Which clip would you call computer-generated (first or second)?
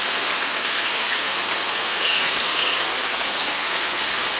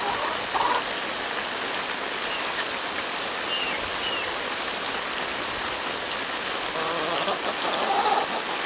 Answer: first